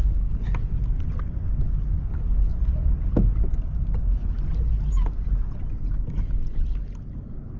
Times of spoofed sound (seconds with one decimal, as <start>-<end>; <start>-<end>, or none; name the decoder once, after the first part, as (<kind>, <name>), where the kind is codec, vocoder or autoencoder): none